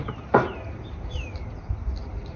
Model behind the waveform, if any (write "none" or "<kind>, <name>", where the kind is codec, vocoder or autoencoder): none